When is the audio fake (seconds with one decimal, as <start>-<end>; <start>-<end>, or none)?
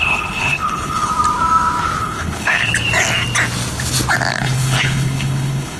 0.0-1.1; 2.0-2.7; 4.3-5.8